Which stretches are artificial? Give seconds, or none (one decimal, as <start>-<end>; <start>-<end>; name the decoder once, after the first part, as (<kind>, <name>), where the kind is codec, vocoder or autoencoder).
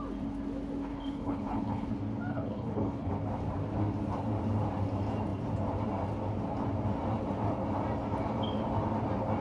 0.9-1.9 (codec, HILCodec); 2.3-3.1